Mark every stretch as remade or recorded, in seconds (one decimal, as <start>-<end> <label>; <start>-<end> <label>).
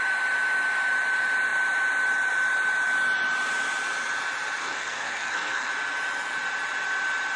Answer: 0.0-4.6 recorded; 4.6-5.7 remade; 5.7-7.4 recorded